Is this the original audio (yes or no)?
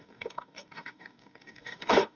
no